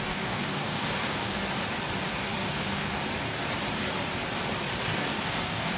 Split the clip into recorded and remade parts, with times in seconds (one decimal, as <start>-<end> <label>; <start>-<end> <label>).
0.0-1.4 remade; 1.4-2.6 recorded; 2.6-3.0 remade; 3.0-4.8 recorded; 4.8-5.8 remade